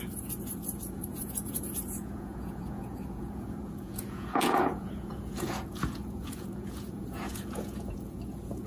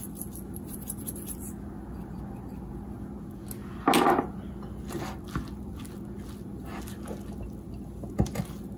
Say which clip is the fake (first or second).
first